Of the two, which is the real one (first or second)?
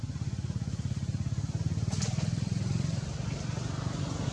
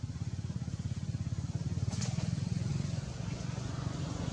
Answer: first